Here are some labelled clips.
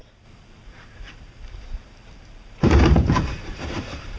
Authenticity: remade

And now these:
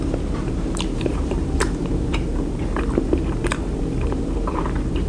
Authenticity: remade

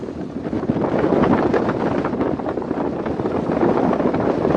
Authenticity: remade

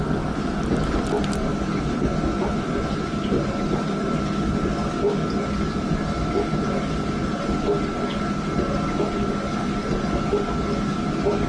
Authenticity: recorded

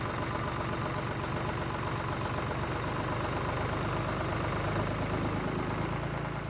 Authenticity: recorded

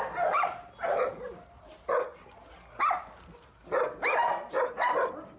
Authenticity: recorded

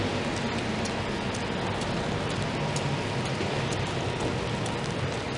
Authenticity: recorded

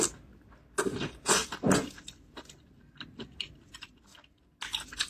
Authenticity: recorded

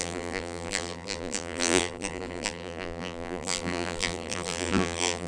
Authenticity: remade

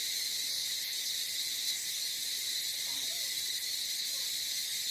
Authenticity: recorded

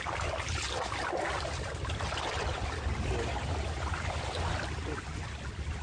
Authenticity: recorded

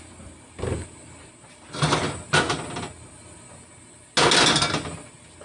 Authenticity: recorded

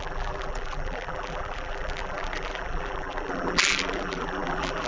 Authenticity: remade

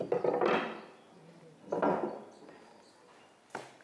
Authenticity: recorded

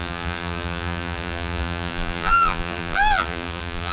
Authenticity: remade